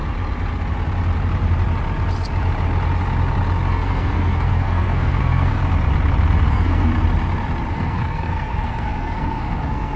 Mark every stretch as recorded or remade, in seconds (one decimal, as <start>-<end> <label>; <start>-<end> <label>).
0.0-3.7 recorded; 3.7-5.6 remade; 5.6-6.5 recorded; 6.5-6.9 remade; 6.9-7.7 recorded; 7.7-10.0 remade